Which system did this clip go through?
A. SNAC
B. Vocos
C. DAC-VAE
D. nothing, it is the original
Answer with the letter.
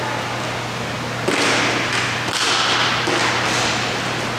D